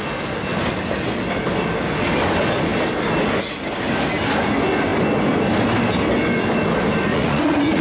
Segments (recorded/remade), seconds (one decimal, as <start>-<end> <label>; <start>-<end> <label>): 0.0-7.1 recorded; 7.1-7.8 remade